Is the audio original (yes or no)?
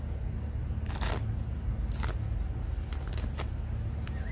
yes